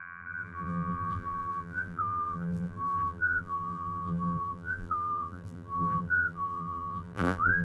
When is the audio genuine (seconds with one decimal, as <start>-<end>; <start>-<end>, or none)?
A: none